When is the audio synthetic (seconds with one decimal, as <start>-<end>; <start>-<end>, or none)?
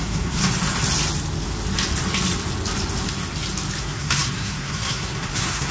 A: 0.0-0.4; 3.8-5.7